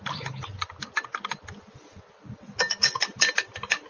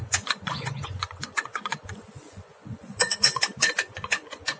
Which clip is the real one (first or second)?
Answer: first